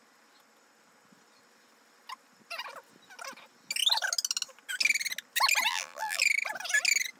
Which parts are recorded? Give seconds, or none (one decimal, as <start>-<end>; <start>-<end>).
0.0-5.7; 6.2-7.2